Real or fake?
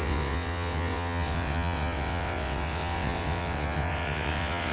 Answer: fake